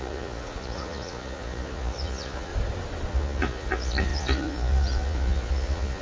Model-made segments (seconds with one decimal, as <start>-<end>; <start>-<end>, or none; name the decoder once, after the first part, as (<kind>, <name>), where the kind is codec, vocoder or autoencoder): 0.0-2.5 (vocoder, Vocos); 3.1-6.0